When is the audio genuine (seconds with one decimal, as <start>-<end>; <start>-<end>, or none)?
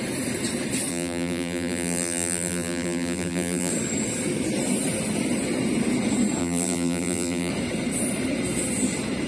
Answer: 0.0-0.9; 3.7-6.4; 7.5-9.3